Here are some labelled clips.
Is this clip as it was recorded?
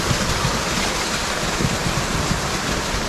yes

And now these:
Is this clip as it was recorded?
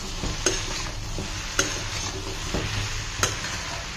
yes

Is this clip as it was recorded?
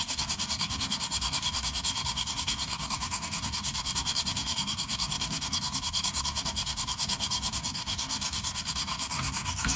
no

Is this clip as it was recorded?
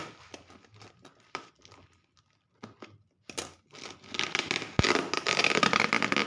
yes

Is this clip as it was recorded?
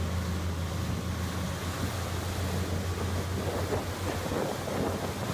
yes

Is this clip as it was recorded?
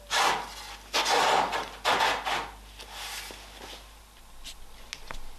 yes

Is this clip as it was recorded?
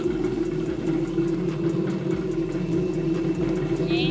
yes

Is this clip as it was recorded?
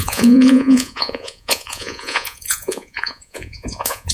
no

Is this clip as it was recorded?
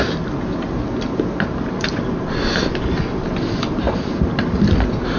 yes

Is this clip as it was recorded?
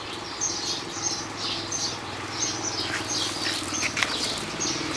yes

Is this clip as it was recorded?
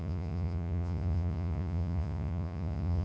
no